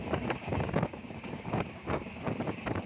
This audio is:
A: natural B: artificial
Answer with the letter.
B